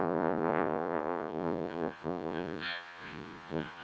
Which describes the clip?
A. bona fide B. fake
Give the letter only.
B